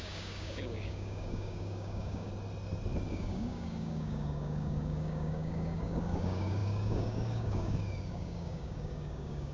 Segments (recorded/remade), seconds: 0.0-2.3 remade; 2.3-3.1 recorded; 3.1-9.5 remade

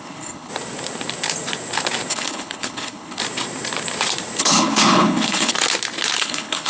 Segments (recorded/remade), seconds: 0.0-0.5 remade; 0.5-2.1 recorded; 2.1-3.2 remade; 3.2-4.4 recorded; 4.4-5.5 remade; 5.5-6.2 recorded; 6.2-6.7 remade

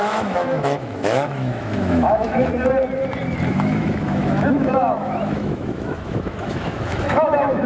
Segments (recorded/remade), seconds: 0.0-2.5 remade; 2.5-3.5 recorded; 3.5-7.7 remade

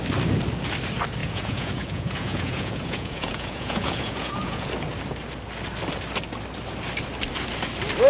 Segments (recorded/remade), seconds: 0.0-1.2 recorded; 1.2-4.7 remade; 4.7-8.1 recorded